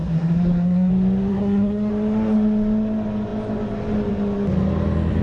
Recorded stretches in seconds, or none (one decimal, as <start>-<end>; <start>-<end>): 0.9-1.3; 1.9-5.2